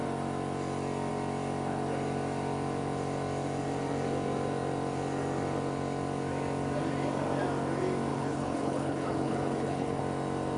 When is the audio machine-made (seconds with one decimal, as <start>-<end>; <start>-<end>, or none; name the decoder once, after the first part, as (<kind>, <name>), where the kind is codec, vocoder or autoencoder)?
8.1-10.0 (codec, HILCodec)